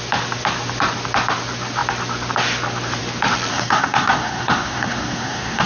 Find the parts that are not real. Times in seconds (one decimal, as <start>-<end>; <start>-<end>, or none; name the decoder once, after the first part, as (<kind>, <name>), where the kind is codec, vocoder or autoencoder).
3.5-5.7 (codec, SNAC)